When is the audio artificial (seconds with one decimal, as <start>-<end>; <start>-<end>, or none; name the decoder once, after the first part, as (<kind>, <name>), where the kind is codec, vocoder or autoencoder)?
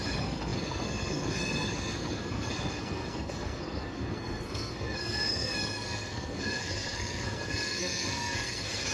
0.0-8.9 (codec, SNAC)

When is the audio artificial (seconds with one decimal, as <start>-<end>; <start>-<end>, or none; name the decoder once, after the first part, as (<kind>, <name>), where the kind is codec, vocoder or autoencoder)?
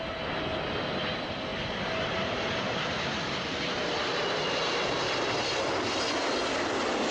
none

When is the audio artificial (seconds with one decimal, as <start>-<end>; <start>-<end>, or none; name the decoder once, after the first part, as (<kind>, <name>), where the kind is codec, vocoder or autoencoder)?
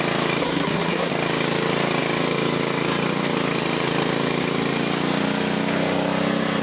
0.4-1.1 (codec, SNAC)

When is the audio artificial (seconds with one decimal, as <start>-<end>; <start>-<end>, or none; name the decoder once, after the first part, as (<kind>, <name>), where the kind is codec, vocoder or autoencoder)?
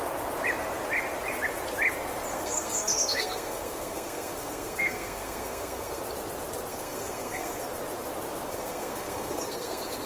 2.3-6.0 (codec, SNAC); 6.7-7.6; 8.5-10.1